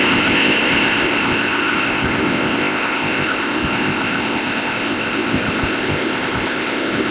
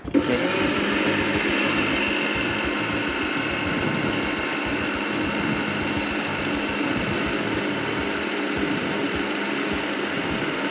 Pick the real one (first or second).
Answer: second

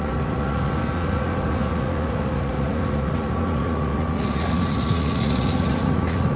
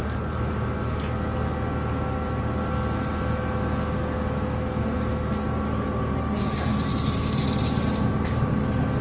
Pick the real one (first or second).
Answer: second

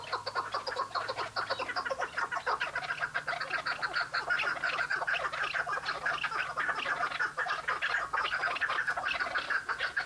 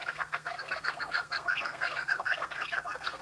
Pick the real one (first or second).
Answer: first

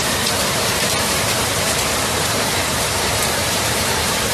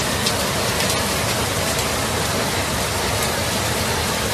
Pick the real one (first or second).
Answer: second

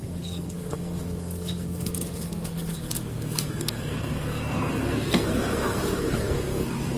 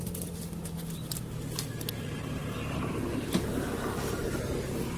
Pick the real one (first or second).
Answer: second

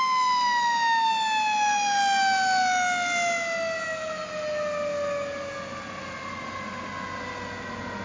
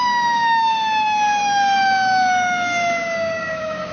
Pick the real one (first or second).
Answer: first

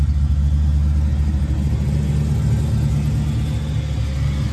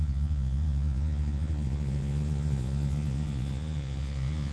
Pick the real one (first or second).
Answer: first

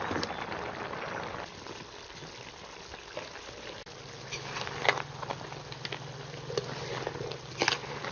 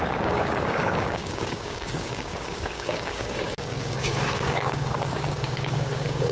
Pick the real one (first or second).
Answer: first